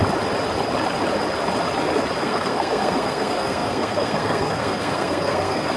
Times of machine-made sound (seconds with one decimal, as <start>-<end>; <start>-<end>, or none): 2.2-5.8